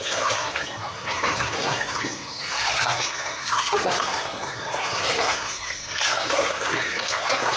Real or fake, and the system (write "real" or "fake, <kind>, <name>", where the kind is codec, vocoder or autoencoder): fake, codec, SNAC